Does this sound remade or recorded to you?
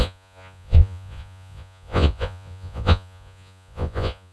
remade